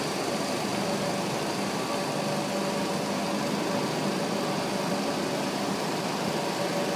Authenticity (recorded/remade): recorded